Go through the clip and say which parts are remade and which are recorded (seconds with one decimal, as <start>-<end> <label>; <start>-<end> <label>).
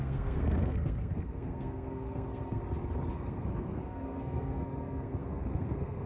0.0-2.6 remade; 2.6-3.1 recorded; 3.1-6.1 remade